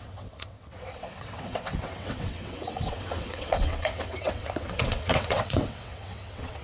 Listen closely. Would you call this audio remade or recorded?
remade